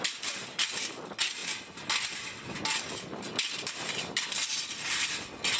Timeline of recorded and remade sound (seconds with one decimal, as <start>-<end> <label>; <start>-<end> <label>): 0.0-5.6 recorded